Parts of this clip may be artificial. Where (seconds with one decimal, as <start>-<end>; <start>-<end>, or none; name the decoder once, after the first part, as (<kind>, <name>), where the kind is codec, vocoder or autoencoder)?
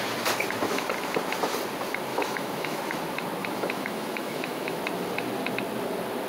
2.1-2.8 (autoencoder, DAC-VAE); 3.4-4.8